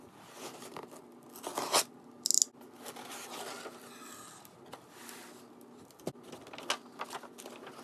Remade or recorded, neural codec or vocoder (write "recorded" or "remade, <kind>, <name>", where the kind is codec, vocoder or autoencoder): recorded